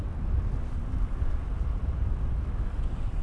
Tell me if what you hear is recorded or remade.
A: recorded